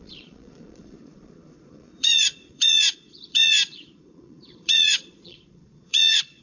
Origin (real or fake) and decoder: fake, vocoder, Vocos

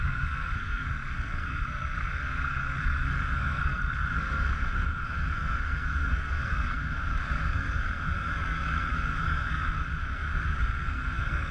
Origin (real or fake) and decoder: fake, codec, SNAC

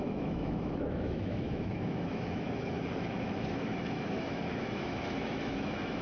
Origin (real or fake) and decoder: fake, autoencoder, DAC-VAE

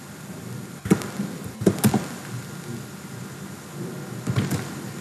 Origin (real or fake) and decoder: real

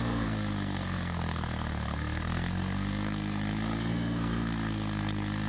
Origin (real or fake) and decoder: fake, codec, SNAC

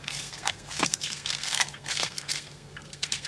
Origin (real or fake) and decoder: fake, codec, SNAC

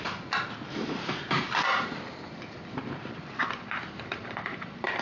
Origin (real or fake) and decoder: fake, vocoder, BigVGAN v2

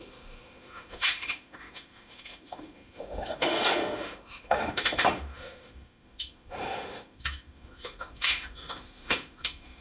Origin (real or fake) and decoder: fake, autoencoder, DAC-VAE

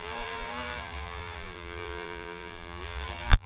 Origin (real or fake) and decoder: fake, vocoder, BigVGAN v2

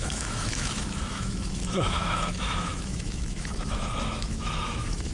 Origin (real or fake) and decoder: fake, autoencoder, DAC-VAE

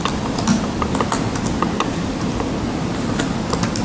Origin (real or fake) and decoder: real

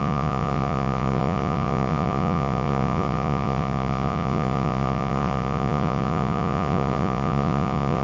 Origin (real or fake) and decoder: fake, vocoder, Vocos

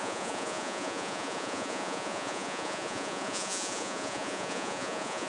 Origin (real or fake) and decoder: fake, vocoder, Vocos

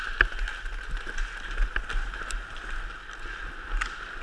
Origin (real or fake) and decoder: real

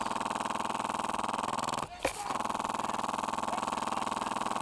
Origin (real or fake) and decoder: real